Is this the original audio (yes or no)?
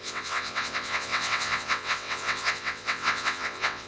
no